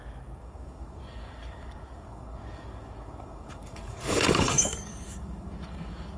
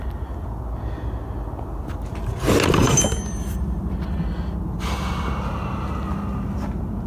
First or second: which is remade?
first